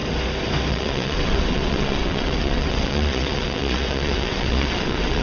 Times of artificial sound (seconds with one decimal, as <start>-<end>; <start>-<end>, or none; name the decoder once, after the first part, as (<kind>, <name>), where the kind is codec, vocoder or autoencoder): 0.7-5.2 (vocoder, WaveNeXt)